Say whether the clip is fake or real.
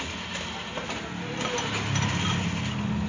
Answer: real